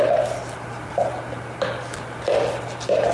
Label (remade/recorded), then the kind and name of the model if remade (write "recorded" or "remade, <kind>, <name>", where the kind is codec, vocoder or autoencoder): recorded